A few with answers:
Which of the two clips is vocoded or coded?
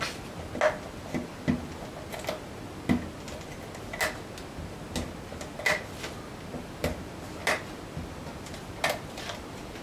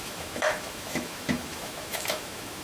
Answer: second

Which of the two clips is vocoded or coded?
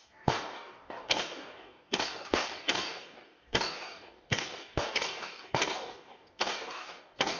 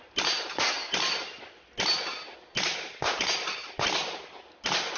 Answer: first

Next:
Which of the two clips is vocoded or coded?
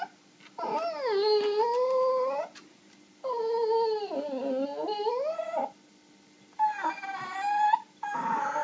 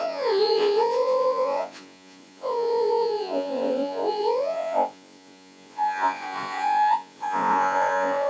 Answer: second